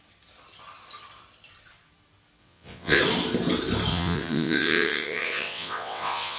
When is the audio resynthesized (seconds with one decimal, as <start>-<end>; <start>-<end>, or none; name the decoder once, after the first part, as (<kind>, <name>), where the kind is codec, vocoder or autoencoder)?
2.4-3.0 (vocoder, WaveNeXt); 3.9-6.4

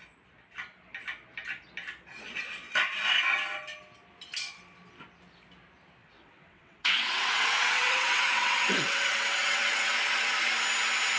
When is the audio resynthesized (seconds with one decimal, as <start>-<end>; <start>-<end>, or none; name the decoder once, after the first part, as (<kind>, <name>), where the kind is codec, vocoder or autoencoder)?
6.0-9.9 (vocoder, WaveNeXt)

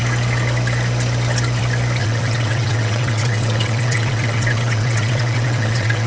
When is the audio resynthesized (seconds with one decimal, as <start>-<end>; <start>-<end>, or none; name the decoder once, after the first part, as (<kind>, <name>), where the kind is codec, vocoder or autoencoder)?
2.0-6.1 (vocoder, WaveNeXt)

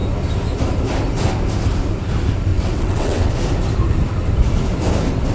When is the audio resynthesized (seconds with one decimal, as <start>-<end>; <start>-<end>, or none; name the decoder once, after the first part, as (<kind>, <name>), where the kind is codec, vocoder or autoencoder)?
2.5-3.3 (vocoder, WaveNeXt)

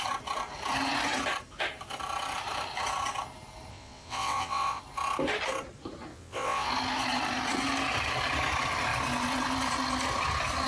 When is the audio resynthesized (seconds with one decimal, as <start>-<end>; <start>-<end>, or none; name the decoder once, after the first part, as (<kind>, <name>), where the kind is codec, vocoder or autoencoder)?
3.7-4.8 (vocoder, WaveNeXt); 6.1-6.7

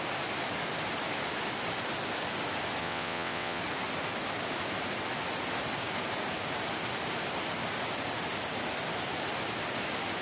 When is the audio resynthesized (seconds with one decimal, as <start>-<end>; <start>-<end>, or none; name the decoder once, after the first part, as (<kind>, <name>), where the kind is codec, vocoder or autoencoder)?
2.8-3.6 (vocoder, WaveNeXt)